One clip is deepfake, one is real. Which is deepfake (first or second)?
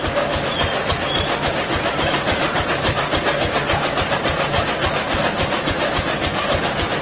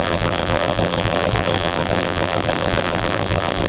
second